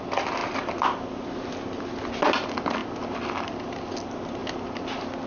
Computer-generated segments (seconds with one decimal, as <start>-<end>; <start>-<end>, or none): none